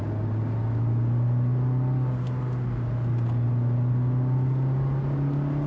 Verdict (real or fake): real